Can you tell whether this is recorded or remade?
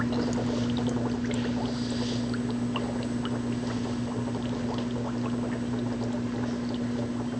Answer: recorded